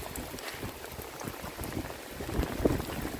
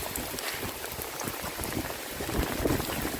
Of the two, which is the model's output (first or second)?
second